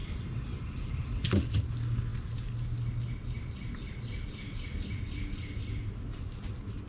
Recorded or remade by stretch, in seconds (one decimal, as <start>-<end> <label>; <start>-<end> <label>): 0.0-6.9 recorded